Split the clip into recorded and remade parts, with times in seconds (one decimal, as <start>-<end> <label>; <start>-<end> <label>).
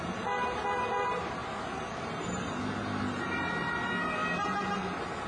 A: 0.0-5.3 recorded